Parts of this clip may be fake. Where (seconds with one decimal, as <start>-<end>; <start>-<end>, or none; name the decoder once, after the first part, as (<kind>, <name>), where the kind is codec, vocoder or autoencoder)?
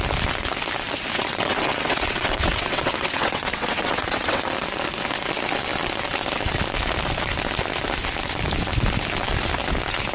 1.1-4.4 (vocoder, WaveNeXt)